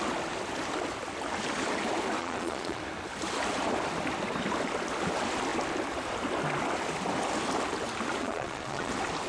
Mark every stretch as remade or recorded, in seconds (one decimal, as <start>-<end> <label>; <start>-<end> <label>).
0.0-2.2 recorded; 2.2-2.8 remade; 2.8-8.2 recorded; 8.2-8.9 remade; 8.9-9.3 recorded